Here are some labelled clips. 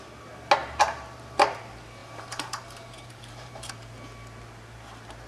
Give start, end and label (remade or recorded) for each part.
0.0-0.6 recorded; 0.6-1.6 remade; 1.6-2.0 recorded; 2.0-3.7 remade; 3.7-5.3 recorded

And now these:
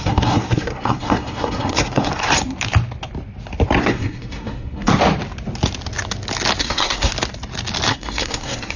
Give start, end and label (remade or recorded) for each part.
0.0-2.1 remade; 2.1-3.8 recorded; 3.8-4.9 remade; 4.9-6.6 recorded; 6.6-7.1 remade; 7.1-7.9 recorded; 7.9-8.8 remade